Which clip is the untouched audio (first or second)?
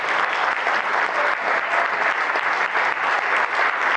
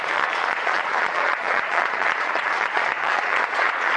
first